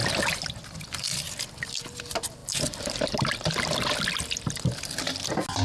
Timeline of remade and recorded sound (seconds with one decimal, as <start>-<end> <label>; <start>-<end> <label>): 0.0-0.6 remade; 0.6-2.4 recorded; 2.4-3.0 remade; 3.0-5.6 recorded